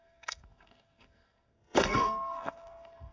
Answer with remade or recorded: remade